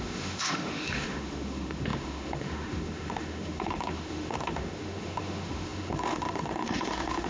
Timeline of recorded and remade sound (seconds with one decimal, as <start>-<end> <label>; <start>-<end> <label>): 0.0-7.3 remade